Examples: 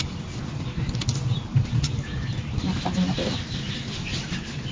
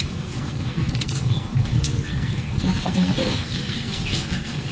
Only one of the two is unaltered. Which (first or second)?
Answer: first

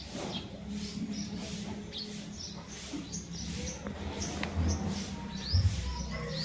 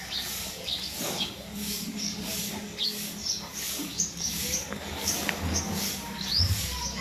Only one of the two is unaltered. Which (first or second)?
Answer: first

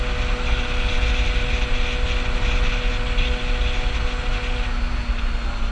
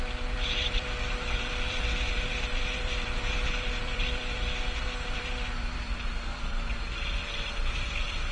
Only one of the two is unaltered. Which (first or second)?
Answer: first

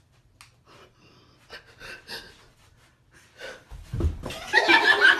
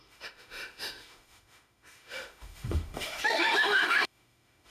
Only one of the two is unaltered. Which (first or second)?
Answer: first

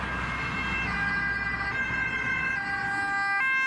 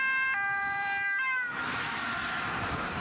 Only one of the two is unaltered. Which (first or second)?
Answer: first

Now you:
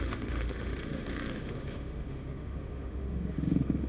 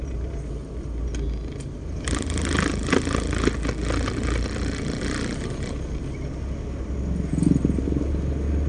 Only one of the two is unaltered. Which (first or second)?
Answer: second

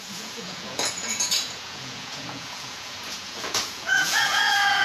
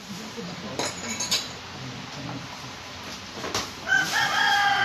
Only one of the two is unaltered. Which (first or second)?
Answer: second